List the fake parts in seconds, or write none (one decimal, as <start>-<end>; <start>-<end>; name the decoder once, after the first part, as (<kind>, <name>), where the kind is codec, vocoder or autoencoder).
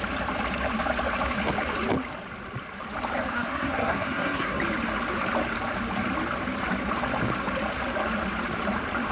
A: 3.3-4.6 (codec, SNAC)